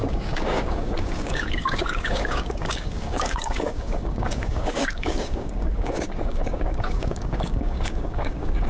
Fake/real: fake